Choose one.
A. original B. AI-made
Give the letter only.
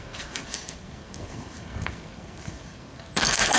B